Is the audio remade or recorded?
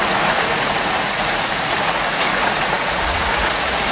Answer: remade